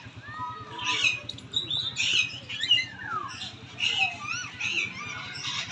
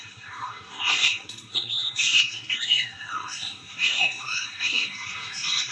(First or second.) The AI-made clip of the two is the second